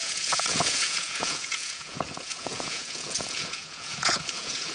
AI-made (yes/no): yes